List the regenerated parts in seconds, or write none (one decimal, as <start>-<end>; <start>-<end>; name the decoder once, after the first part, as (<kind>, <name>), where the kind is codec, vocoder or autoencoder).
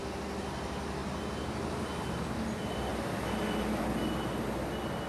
none